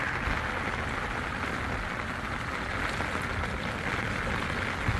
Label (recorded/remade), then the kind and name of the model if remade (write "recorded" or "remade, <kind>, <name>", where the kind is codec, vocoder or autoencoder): recorded